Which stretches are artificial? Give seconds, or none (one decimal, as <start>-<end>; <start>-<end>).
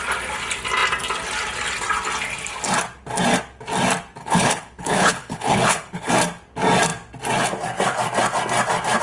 4.2-6.1